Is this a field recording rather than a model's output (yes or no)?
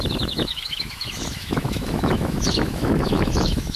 no